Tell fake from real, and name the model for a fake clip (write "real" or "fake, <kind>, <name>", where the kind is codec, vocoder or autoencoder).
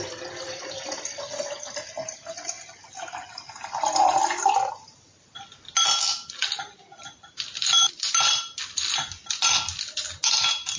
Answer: real